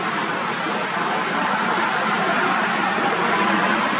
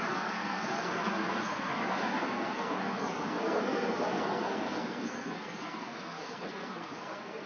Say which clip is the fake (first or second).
second